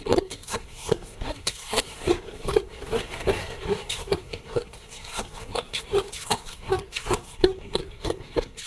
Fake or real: fake